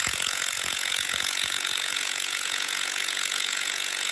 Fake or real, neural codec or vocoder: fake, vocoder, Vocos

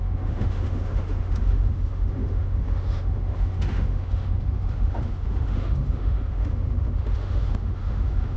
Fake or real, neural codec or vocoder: fake, autoencoder, DAC-VAE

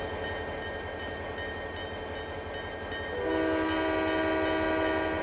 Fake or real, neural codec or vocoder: real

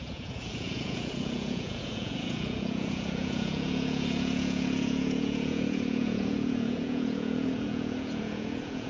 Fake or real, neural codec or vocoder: fake, vocoder, Vocos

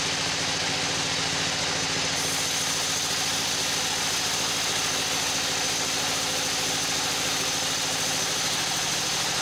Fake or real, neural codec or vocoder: real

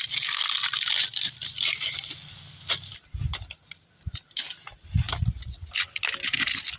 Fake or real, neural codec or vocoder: real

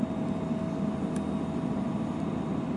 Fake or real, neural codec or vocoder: real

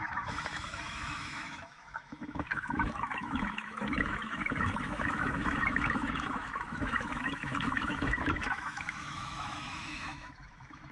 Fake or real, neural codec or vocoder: fake, autoencoder, DAC-VAE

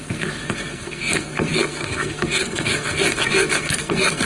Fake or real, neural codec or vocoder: fake, codec, SNAC